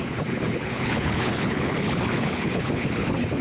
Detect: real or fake fake